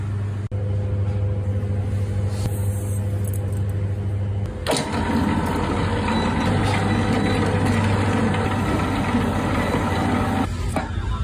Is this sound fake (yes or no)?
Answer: no